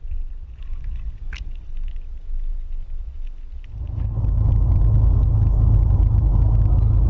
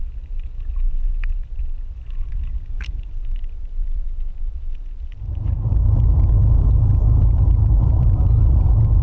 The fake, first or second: second